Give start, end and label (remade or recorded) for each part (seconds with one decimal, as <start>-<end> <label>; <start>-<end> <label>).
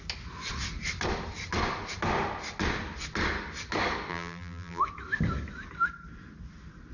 0.0-4.1 recorded; 4.1-4.8 remade; 4.8-6.9 recorded